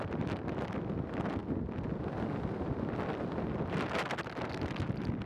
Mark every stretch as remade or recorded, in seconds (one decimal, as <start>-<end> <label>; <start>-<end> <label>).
0.0-5.3 recorded